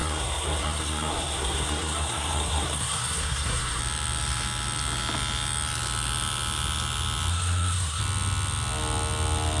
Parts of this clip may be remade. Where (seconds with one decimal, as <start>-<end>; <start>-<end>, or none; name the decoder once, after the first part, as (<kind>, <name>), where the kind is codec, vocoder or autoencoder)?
0.0-3.8 (codec, SNAC); 7.3-8.0